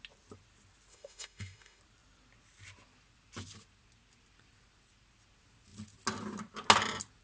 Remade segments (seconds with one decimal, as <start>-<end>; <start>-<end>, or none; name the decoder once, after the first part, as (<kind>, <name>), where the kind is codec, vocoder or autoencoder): 0.9-1.8 (autoencoder, DAC-VAE)